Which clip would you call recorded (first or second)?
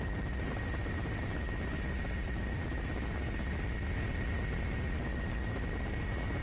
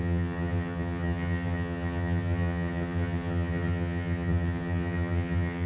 first